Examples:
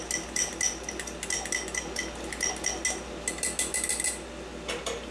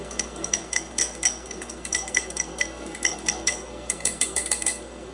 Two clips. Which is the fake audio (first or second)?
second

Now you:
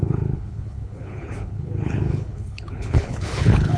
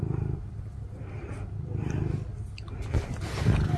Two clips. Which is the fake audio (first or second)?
first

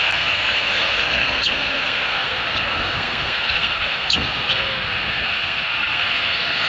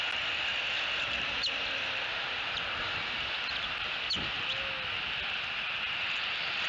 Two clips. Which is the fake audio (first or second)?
first